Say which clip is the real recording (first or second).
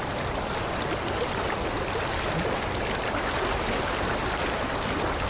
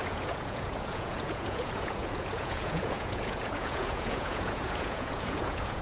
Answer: first